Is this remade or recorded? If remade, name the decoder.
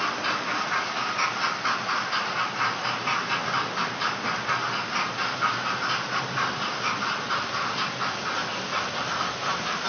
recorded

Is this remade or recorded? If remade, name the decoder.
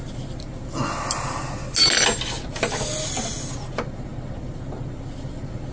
recorded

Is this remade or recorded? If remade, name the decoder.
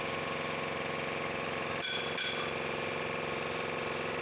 remade, vocoder, BigVGAN v2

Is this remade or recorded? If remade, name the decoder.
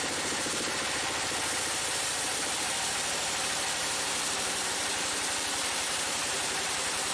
remade, vocoder, BigVGAN v2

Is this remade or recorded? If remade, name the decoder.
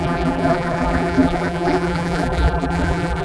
remade, vocoder, BigVGAN v2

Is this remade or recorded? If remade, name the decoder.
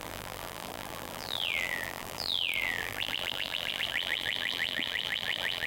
remade, vocoder, BigVGAN v2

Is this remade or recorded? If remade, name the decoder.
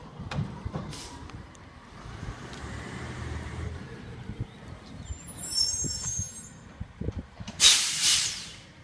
remade, vocoder, BigVGAN v2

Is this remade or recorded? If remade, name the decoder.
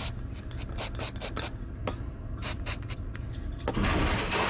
recorded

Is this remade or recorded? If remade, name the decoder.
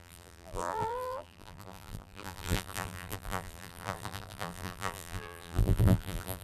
remade, vocoder, BigVGAN v2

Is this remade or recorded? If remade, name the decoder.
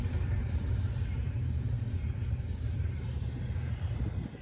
remade, vocoder, BigVGAN v2